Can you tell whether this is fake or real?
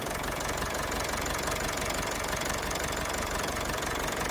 fake